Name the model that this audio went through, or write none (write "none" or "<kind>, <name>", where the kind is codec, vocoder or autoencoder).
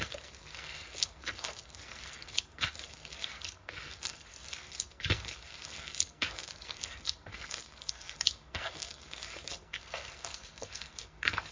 codec, SNAC